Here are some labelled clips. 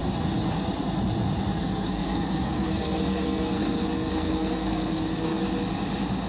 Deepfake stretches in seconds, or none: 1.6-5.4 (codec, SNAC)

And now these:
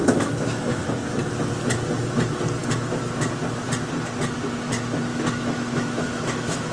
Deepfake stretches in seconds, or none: 0.0-0.8 (autoencoder, DAC-VAE); 5.1-6.7

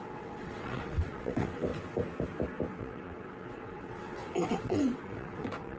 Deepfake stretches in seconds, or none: 0.0-1.7 (vocoder, WaveNeXt); 2.8-5.8

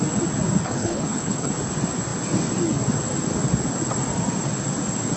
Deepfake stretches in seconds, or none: 0.6-1.5 (codec, HILCodec)

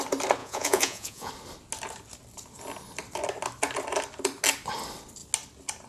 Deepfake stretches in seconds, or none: 0.4-1.3 (vocoder, Vocos)

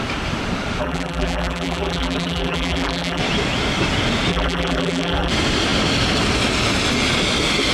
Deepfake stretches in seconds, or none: 0.8-3.2 (vocoder, BigVGAN v2); 4.3-5.3

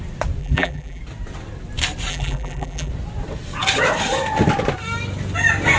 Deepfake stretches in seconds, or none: 0.4-1.0 (vocoder, BigVGAN v2); 2.1-2.9